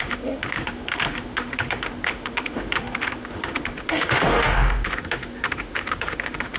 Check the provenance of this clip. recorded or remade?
remade